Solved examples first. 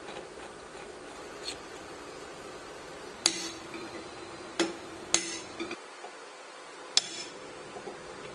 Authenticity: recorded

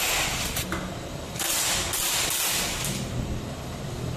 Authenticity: recorded